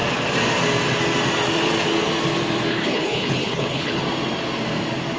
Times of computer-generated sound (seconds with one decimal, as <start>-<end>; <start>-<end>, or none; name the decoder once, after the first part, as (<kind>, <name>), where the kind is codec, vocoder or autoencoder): 2.7-4.0 (codec, HILCodec)